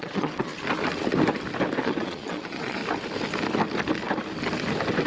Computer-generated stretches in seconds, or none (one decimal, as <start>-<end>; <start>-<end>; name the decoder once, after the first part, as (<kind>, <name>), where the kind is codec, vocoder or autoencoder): 0.0-0.5 (vocoder, Vocos); 1.8-2.8